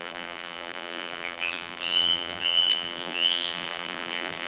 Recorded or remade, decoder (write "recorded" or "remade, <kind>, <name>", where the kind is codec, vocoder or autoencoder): remade, vocoder, BigVGAN v2